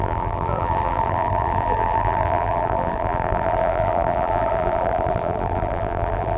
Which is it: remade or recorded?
remade